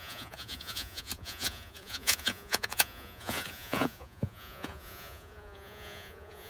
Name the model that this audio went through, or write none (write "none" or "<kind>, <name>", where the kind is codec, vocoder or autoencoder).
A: vocoder, Vocos